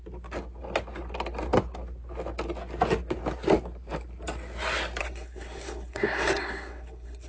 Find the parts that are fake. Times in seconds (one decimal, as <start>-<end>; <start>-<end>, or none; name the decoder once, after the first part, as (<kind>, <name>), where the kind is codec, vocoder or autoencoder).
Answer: 5.0-7.3 (codec, SNAC)